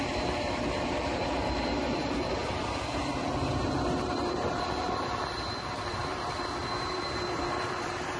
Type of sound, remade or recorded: remade